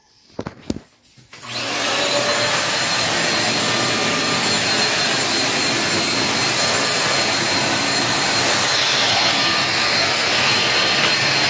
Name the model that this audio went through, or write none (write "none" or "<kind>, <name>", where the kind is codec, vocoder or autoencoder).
none